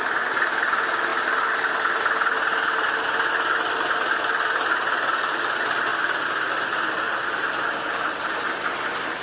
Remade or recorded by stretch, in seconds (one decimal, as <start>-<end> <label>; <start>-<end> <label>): 0.0-9.2 recorded